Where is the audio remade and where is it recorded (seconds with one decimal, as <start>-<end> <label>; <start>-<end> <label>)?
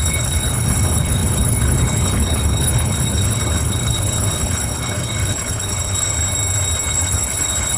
0.0-6.2 remade; 6.2-6.9 recorded; 6.9-7.8 remade